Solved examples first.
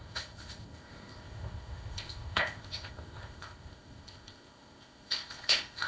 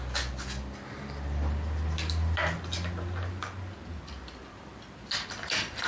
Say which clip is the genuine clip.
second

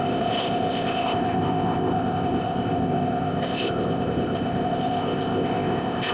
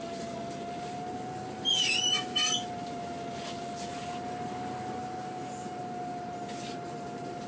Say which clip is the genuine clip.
second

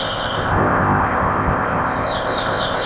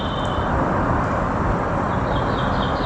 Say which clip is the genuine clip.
second